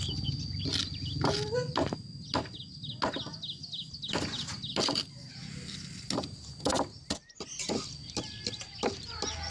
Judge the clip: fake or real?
real